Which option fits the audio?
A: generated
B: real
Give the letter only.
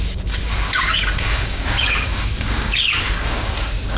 A